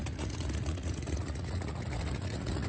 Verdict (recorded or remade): remade